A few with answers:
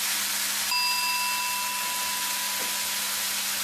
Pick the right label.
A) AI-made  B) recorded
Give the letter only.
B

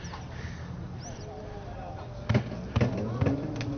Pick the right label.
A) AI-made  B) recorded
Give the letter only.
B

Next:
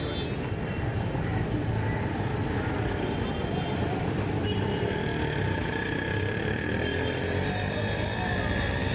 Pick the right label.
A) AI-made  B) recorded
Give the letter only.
B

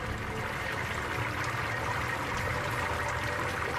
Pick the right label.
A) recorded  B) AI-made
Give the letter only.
A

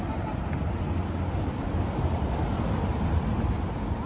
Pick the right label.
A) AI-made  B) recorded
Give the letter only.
B